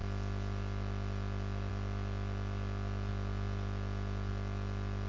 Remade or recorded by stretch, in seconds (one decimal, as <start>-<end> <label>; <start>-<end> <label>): 0.0-5.1 recorded